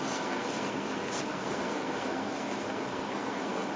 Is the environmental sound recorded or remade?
remade